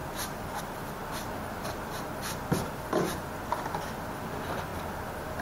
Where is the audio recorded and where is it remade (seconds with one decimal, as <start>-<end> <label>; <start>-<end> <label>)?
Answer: 0.0-5.4 recorded